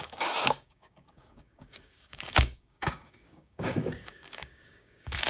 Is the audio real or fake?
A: fake